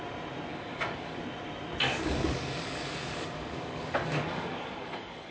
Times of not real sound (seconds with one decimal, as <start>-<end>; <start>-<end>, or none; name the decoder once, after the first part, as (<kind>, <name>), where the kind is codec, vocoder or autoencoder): 0.5-1.2 (codec, DAC); 1.9-5.3